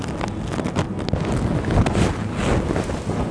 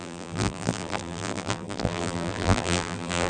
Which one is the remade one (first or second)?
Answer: second